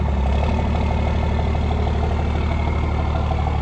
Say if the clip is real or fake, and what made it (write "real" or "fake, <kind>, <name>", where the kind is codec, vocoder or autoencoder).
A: real